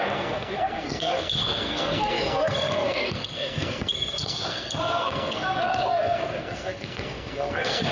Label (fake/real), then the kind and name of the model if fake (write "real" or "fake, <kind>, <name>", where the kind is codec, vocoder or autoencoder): fake, codec, SNAC